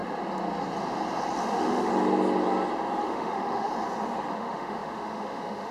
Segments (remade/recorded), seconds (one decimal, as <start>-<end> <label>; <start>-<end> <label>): 0.0-1.5 recorded; 1.5-1.9 remade; 1.9-3.0 recorded; 3.0-3.7 remade; 3.7-4.3 recorded; 4.3-5.7 remade